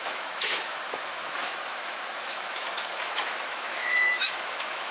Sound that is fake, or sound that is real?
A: fake